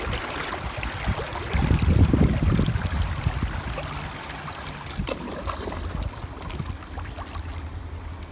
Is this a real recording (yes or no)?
yes